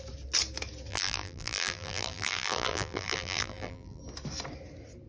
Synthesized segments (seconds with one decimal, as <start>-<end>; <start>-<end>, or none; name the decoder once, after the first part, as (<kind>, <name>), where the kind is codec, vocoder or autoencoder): 0.9-4.0 (vocoder, BigVGAN v2)

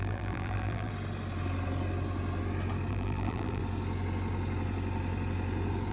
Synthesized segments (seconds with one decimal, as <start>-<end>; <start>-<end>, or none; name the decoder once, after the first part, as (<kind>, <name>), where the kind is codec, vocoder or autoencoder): 0.0-0.9 (vocoder, BigVGAN v2); 2.9-3.6

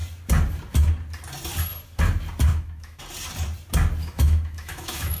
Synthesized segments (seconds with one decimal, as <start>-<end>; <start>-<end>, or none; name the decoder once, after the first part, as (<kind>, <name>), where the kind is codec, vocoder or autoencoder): 2.5-3.0 (autoencoder, DAC-VAE); 4.0-5.2

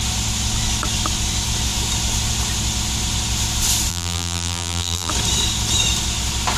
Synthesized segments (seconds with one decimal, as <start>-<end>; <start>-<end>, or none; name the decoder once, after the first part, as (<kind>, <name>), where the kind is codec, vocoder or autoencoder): 3.9-5.1 (vocoder, BigVGAN v2)

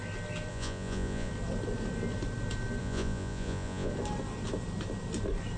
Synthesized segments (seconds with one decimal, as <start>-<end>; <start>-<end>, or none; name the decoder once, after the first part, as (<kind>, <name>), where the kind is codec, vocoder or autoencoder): 0.5-1.3 (vocoder, Vocos); 2.8-3.9